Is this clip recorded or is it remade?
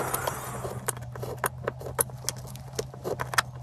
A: recorded